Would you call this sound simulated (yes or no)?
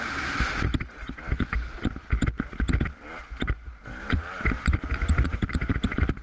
no